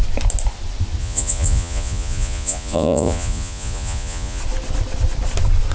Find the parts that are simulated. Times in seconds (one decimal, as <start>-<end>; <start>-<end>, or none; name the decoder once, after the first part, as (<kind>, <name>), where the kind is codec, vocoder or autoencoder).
1.0-4.4 (vocoder, Vocos)